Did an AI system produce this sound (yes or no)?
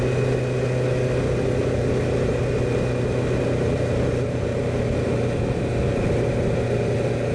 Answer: no